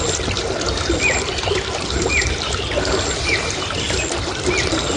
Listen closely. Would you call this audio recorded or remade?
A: recorded